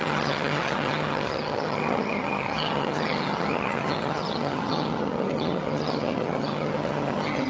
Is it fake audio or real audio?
fake